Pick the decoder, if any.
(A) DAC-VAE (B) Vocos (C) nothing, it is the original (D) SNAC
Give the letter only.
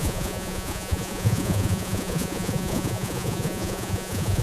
B